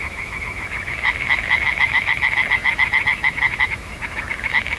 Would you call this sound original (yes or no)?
no